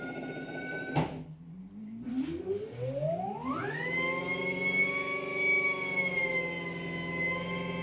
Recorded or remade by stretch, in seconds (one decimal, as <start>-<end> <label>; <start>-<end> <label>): 0.0-7.8 recorded